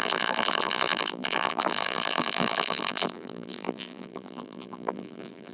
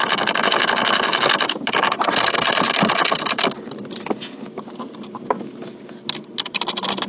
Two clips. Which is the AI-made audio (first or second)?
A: first